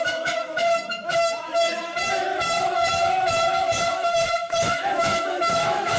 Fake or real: fake